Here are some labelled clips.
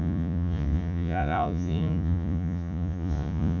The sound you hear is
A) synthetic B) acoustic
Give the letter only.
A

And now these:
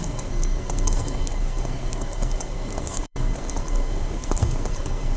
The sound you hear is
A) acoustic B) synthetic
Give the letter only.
B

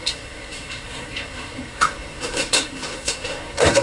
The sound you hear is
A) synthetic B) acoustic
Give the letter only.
A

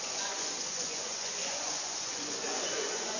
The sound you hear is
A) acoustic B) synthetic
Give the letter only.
B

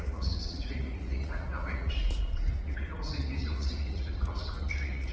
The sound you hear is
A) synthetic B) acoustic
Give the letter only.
A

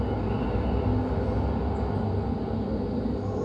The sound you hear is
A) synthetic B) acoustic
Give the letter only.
B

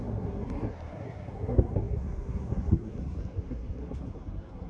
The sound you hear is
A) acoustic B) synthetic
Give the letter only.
B